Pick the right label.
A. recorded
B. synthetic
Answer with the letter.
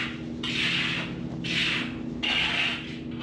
A